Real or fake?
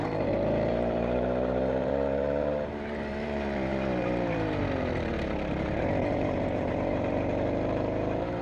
fake